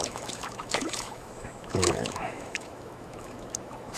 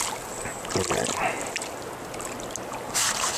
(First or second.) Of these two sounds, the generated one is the first